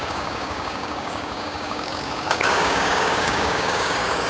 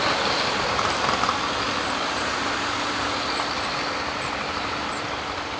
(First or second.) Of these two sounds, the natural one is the second